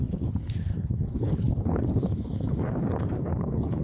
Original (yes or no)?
no